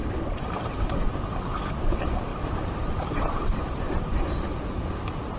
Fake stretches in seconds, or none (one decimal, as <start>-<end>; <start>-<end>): 0.0-1.2; 2.3-4.3